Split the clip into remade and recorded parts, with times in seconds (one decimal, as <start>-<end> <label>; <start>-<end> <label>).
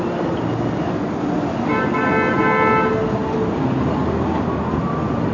0.0-5.3 recorded